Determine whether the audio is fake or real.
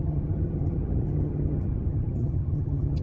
fake